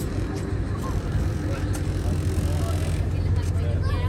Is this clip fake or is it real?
real